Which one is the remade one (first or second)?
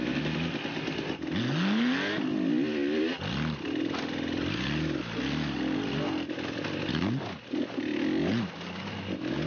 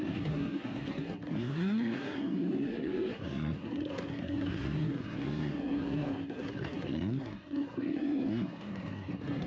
second